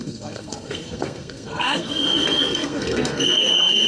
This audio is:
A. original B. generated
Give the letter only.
B